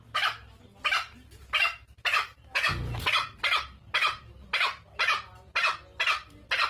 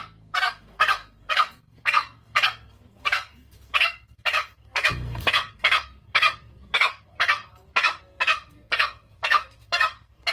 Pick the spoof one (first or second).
second